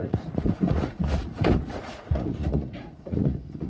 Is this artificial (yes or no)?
yes